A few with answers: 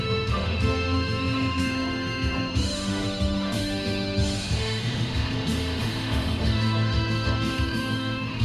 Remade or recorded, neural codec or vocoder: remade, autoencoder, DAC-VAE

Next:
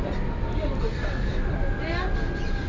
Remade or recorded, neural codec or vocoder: recorded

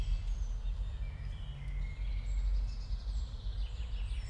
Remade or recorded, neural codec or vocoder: recorded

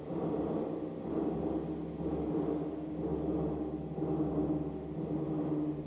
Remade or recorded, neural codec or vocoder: recorded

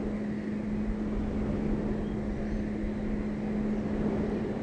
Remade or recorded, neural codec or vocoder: recorded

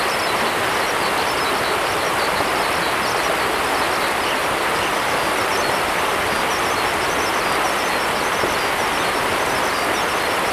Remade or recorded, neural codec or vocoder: recorded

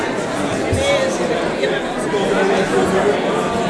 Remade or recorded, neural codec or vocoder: recorded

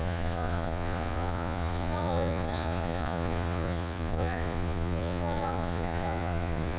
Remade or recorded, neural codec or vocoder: remade, vocoder, Vocos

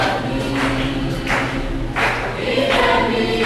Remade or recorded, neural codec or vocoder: recorded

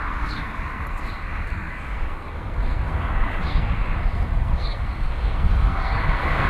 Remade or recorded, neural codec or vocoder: remade, codec, SNAC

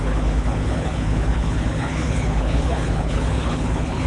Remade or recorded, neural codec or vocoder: remade, codec, HILCodec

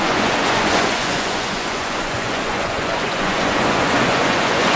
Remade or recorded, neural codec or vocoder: remade, vocoder, Vocos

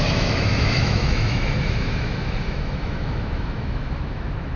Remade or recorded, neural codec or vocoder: remade, autoencoder, DAC-VAE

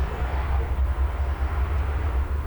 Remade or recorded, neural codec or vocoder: recorded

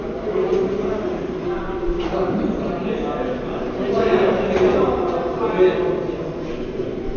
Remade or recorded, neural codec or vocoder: recorded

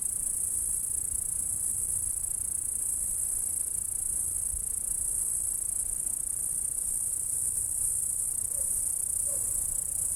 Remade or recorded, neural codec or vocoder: remade, vocoder, BigVGAN v2